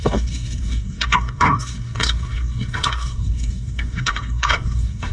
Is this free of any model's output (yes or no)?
no